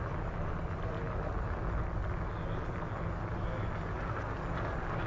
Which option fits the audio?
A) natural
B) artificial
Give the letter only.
A